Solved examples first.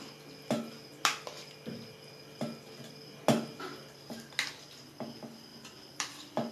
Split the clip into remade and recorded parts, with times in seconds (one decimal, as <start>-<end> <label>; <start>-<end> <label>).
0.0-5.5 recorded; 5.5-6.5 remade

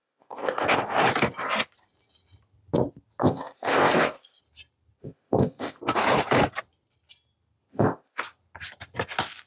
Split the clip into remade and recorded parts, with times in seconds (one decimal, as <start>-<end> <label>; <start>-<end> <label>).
0.0-0.8 remade; 0.8-3.2 recorded; 3.2-4.4 remade; 4.4-5.0 recorded; 5.0-5.8 remade; 5.8-7.7 recorded; 7.7-8.2 remade; 8.2-9.5 recorded

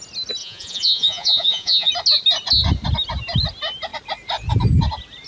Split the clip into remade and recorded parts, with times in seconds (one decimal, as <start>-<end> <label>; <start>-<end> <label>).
0.0-0.4 recorded; 0.4-1.9 remade; 1.9-5.3 recorded

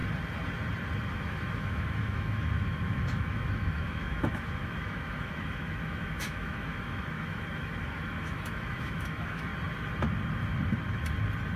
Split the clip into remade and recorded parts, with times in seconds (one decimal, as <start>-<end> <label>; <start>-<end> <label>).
0.0-1.1 recorded; 1.1-9.5 remade; 9.5-11.6 recorded

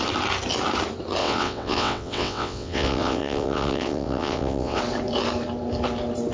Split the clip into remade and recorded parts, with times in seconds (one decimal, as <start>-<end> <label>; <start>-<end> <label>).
0.0-1.2 recorded; 1.2-4.8 remade; 4.8-6.3 recorded

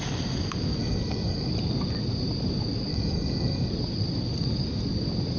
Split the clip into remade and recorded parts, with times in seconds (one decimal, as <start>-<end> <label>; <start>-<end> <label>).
0.0-0.8 recorded; 0.8-1.5 remade; 1.5-2.9 recorded; 2.9-3.7 remade; 3.7-5.4 recorded

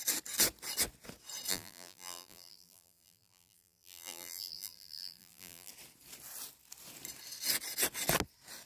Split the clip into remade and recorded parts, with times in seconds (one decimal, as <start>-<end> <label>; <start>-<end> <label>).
0.0-1.5 recorded; 1.5-5.7 remade; 5.7-8.7 recorded